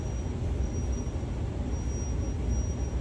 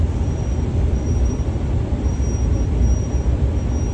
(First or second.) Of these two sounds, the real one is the first